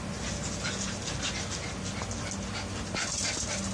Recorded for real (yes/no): yes